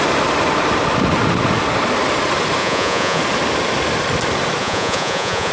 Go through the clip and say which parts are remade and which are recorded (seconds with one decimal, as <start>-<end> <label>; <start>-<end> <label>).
0.0-2.6 recorded; 2.6-3.2 remade; 3.2-4.6 recorded; 4.6-5.5 remade

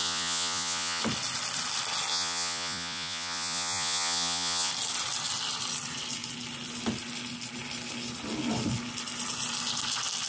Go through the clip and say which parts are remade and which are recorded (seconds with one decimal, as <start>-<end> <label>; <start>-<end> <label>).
0.0-1.0 remade; 1.0-2.1 recorded; 2.1-4.7 remade; 4.7-10.3 recorded

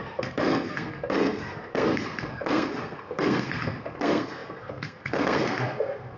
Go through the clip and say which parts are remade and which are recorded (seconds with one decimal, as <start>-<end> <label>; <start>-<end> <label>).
0.0-6.2 remade

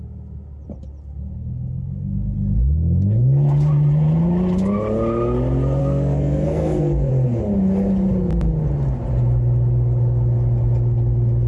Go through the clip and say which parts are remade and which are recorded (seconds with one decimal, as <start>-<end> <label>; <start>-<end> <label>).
0.0-5.8 recorded; 5.8-7.1 remade; 7.1-11.5 recorded

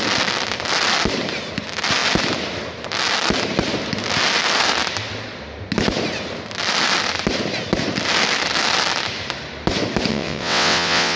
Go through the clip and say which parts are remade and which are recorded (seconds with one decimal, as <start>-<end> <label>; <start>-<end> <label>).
0.0-10.1 recorded; 10.1-11.2 remade